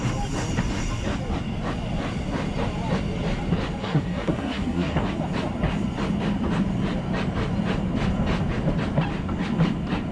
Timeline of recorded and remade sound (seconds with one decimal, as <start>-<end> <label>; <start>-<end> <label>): 0.0-3.8 recorded; 3.8-5.1 remade; 5.1-10.1 recorded